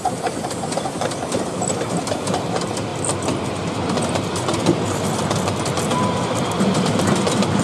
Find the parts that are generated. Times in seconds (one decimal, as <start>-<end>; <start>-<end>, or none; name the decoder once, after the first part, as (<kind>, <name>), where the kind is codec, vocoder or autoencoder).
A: none

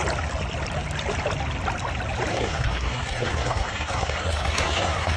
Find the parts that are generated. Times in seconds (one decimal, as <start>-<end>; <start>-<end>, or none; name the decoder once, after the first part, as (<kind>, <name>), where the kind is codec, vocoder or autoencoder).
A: 2.3-5.2 (codec, SNAC)

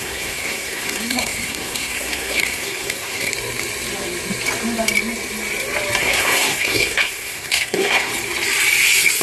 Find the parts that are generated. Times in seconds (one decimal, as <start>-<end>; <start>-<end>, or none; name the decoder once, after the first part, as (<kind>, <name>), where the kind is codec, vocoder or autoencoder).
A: 0.0-3.3 (codec, SNAC); 6.0-8.1

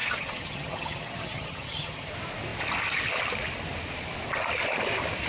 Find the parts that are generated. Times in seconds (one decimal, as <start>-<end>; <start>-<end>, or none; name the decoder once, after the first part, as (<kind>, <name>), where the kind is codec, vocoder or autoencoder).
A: 0.0-2.1 (vocoder, HiFi-GAN)

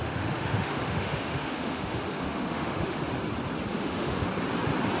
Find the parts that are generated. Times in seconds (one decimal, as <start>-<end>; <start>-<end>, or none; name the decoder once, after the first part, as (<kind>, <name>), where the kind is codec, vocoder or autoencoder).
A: 0.0-3.0 (autoencoder, DAC-VAE); 3.7-4.3